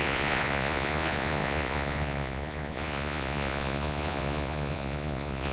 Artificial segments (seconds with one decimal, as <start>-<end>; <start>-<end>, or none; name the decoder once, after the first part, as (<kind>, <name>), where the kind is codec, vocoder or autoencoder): 0.0-5.5 (vocoder, Vocos)